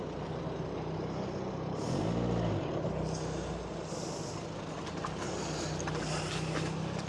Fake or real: real